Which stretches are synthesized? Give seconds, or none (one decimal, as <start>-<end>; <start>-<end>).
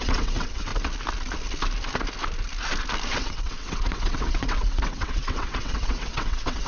0.0-0.7; 3.1-6.7